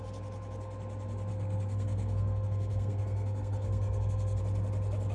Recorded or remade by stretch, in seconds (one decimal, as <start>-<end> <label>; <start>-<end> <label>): 0.0-1.3 recorded; 1.3-4.4 remade; 4.4-5.1 recorded